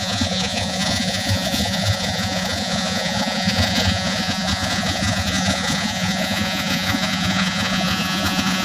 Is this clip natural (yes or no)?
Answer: no